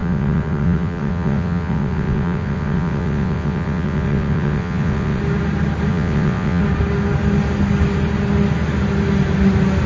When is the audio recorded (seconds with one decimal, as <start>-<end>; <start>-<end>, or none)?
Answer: 5.2-5.9; 6.6-9.9